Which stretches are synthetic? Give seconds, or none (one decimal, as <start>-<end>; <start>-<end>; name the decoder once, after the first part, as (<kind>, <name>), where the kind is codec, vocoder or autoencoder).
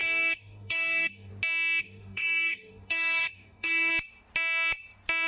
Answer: 0.0-1.3 (codec, DAC); 1.8-3.9